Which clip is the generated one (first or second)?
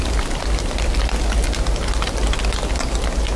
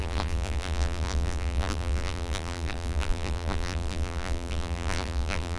second